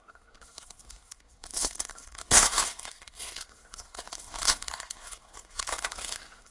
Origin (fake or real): fake